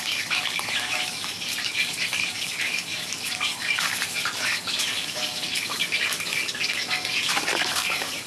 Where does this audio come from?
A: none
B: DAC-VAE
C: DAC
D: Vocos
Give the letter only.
C